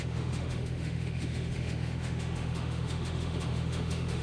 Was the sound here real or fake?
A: fake